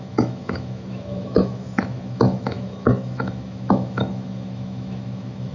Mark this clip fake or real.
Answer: fake